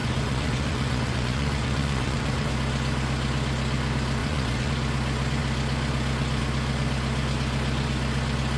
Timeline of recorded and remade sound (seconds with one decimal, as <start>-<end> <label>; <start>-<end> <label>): 0.0-2.5 remade; 2.5-4.2 recorded; 4.2-4.7 remade; 4.7-8.6 recorded